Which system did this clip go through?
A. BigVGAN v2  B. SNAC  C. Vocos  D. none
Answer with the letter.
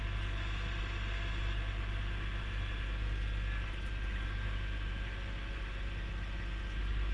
D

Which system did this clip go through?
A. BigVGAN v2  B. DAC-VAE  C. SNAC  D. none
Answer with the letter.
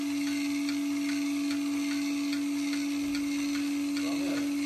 D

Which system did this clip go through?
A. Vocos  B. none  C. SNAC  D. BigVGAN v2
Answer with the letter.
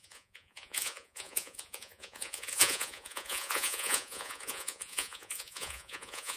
A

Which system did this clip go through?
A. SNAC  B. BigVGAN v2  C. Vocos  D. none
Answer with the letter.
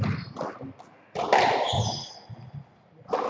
D